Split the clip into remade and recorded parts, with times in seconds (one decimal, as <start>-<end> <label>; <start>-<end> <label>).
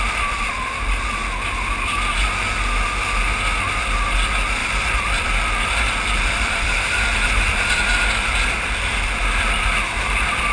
0.0-4.6 recorded; 4.6-7.0 remade; 7.0-7.5 recorded; 7.5-9.2 remade; 9.2-10.5 recorded